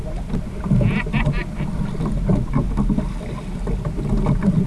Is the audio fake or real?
real